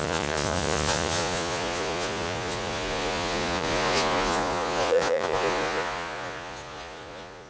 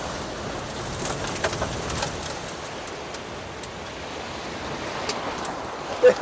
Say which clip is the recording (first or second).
second